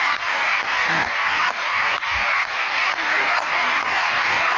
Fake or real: fake